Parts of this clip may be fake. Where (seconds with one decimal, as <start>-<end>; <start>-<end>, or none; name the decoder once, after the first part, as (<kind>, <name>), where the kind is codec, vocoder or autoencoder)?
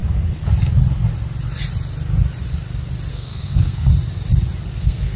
3.1-3.9 (codec, SNAC); 4.8-5.2